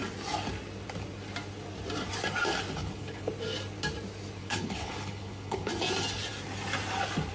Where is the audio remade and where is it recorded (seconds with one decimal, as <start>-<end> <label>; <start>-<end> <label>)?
0.0-2.8 recorded; 2.8-3.3 remade; 3.3-4.4 recorded; 4.4-5.7 remade; 5.7-7.3 recorded